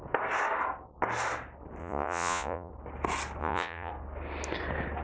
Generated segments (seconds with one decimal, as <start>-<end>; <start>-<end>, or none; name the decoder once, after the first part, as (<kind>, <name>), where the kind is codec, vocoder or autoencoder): 1.8-2.7 (vocoder, Vocos); 3.4-3.9